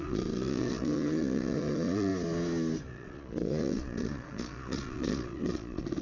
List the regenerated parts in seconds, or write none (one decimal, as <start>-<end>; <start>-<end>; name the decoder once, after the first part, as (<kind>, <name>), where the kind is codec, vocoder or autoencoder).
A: 0.0-2.1 (vocoder, Vocos); 2.9-6.0